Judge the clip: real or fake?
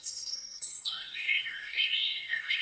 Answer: fake